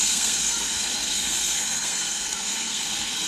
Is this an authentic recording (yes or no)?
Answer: no